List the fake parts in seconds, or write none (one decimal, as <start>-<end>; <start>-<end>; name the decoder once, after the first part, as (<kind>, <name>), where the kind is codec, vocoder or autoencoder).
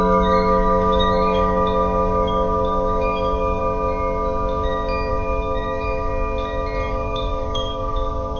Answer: 0.0-3.6 (autoencoder, DAC-VAE); 5.1-6.1; 6.9-8.4